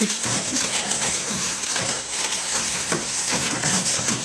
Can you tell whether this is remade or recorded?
remade